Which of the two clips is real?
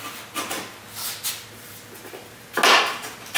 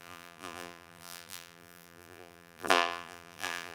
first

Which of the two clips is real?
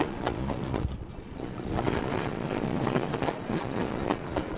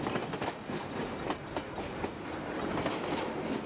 second